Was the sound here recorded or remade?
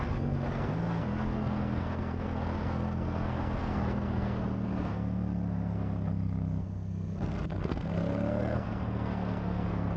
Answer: remade